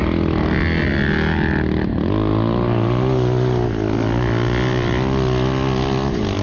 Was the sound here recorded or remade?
recorded